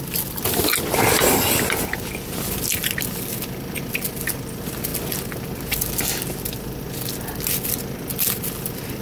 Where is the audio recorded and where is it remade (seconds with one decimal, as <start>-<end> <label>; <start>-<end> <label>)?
0.0-9.0 recorded